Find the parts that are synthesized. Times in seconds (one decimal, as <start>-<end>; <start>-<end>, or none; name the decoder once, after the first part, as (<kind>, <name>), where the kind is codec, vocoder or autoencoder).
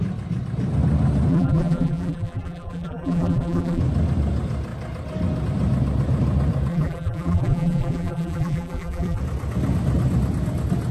1.3-3.8 (vocoder, BigVGAN v2); 6.7-9.2